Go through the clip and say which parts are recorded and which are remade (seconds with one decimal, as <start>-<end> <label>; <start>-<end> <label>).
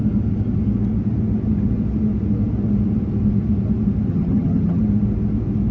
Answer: 0.0-4.1 recorded; 4.1-4.8 remade; 4.8-5.7 recorded